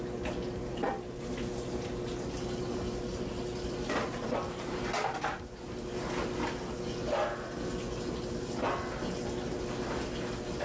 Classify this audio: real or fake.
real